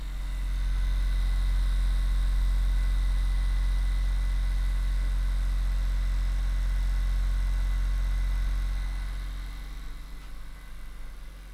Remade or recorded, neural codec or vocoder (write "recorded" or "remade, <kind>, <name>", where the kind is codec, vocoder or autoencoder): recorded